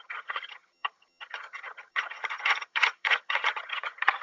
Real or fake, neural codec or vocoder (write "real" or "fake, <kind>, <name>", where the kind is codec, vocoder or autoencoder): fake, vocoder, HiFi-GAN